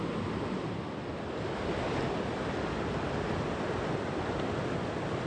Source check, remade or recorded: recorded